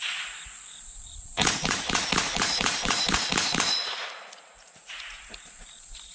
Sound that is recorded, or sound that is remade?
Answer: remade